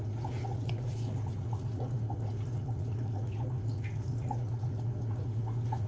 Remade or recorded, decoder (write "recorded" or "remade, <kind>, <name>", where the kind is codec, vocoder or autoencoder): remade, vocoder, Vocos